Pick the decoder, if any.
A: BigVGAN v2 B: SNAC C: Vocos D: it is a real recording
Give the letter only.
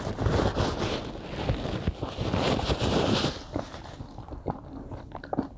D